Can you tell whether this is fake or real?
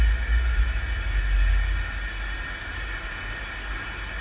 real